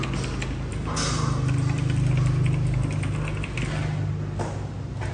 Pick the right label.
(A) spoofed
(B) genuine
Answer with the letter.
B